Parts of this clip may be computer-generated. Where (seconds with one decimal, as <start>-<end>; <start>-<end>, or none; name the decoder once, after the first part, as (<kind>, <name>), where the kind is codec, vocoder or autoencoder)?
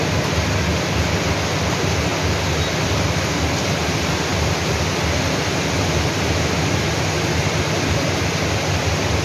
none